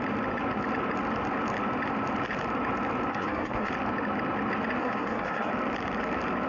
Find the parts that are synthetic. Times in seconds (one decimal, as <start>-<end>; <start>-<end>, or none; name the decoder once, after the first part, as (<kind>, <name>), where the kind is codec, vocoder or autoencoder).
3.1-3.7 (codec, SNAC); 4.8-5.5